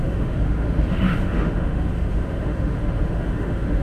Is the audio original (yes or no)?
no